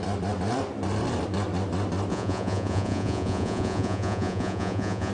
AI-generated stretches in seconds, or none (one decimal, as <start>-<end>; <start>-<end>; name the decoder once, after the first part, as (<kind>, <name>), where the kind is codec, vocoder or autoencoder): 2.1-5.1 (vocoder, Vocos)